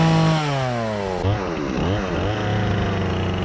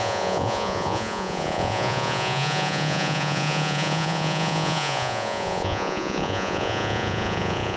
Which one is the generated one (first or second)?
second